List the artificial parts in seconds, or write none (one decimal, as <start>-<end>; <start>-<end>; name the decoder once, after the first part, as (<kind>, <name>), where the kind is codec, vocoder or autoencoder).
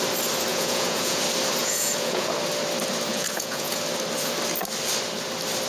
0.5-1.2 (vocoder, Vocos); 1.6-2.3; 3.1-3.8